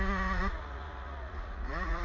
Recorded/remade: remade